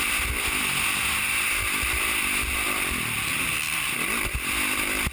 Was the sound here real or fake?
fake